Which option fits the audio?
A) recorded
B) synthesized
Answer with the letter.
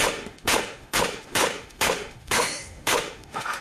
B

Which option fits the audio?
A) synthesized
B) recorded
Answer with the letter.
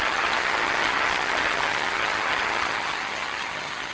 A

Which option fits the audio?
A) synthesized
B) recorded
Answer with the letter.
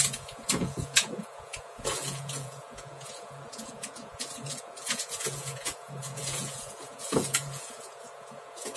A